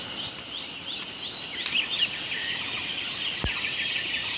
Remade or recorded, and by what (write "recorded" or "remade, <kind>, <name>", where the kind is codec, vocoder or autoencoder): recorded